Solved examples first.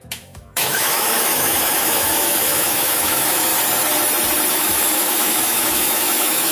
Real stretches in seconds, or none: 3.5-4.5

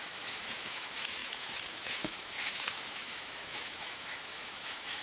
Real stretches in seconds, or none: none

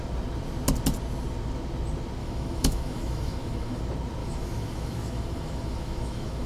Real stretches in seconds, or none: 0.0-2.2; 3.8-4.2

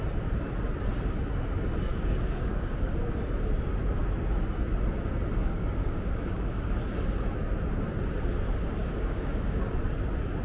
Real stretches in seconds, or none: 0.0-1.9; 2.9-5.4; 6.8-8.8; 9.6-10.4

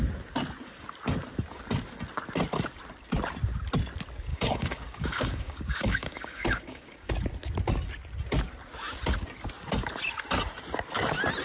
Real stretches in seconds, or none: 0.0-4.3; 7.1-11.4

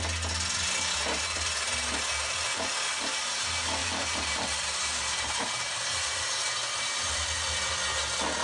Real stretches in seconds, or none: 0.0-3.8; 7.1-8.4

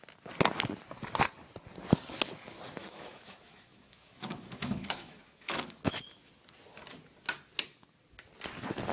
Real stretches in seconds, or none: 0.0-2.8; 6.3-8.9